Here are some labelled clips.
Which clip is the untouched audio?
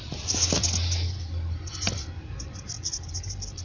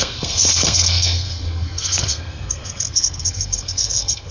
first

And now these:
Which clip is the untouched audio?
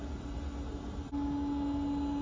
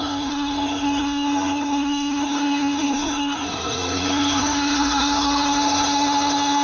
first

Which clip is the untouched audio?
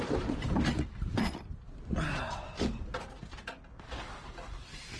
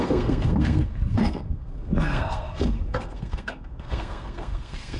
first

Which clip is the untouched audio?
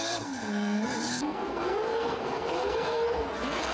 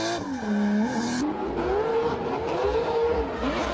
second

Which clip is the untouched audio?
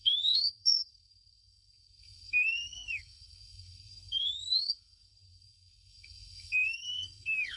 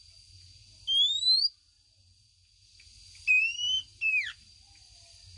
second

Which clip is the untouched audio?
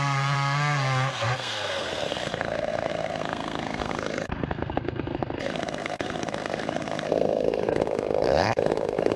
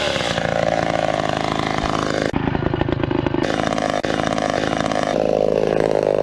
second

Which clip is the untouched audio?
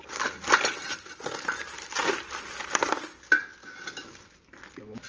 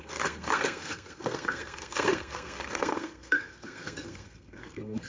first